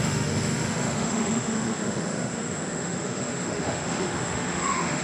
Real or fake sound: fake